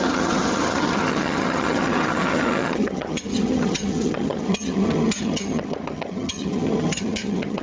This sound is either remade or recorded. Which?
remade